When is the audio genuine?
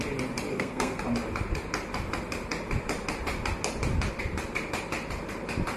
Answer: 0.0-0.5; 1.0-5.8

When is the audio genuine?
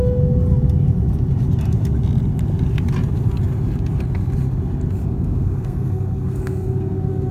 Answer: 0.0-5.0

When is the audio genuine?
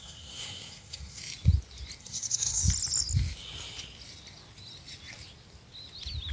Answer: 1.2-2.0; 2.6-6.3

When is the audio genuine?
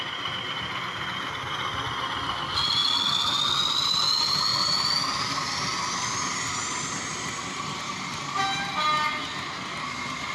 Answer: 0.0-10.3